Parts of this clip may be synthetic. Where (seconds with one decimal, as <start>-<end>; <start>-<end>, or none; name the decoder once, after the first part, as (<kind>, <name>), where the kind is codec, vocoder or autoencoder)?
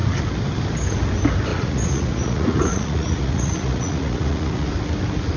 1.5-4.7 (vocoder, Vocos)